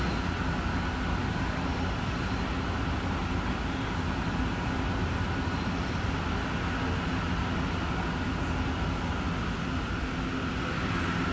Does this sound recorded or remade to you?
recorded